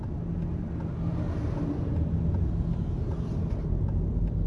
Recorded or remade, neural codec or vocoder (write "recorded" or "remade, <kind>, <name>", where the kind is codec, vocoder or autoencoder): recorded